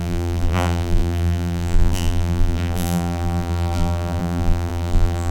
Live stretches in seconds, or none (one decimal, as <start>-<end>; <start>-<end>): none